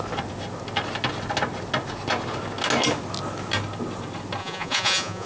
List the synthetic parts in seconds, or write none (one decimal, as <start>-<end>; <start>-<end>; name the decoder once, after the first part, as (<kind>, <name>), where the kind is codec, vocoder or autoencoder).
4.4-5.3 (vocoder, Vocos)